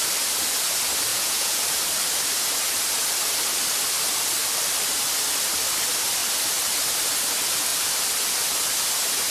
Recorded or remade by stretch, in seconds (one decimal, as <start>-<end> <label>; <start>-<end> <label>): 0.0-1.1 recorded; 1.1-1.6 remade; 1.6-9.3 recorded

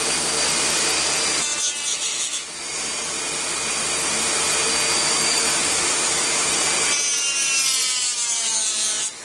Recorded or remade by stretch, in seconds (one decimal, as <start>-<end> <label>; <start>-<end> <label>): 0.0-1.9 recorded; 1.9-2.6 remade; 2.6-5.0 recorded; 5.0-6.5 remade; 6.5-9.2 recorded

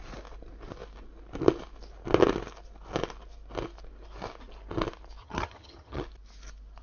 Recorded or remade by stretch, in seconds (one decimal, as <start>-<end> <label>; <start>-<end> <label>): 0.0-5.2 recorded; 5.2-6.0 remade; 6.0-6.8 recorded

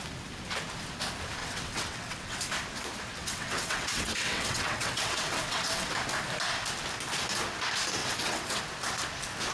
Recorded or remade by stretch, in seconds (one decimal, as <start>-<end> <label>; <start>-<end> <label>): 0.0-1.4 recorded; 1.4-2.4 remade; 2.4-3.2 recorded; 3.2-5.9 remade; 5.9-8.0 recorded; 8.0-8.6 remade; 8.6-9.5 recorded

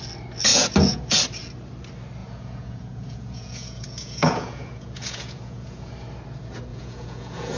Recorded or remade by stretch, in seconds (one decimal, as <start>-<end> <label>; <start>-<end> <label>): 0.0-0.5 recorded; 0.5-1.2 remade; 1.2-2.2 recorded; 2.2-5.9 remade; 5.9-6.7 recorded; 6.7-7.6 remade

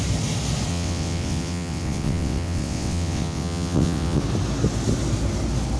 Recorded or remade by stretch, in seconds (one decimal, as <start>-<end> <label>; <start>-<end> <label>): 0.0-0.7 recorded; 0.7-4.2 remade; 4.2-5.8 recorded

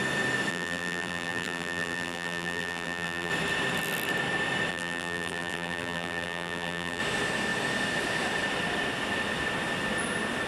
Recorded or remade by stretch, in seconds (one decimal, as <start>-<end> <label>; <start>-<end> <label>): 0.0-0.5 recorded; 0.5-3.3 remade; 3.3-4.7 recorded; 4.7-7.0 remade; 7.0-10.5 recorded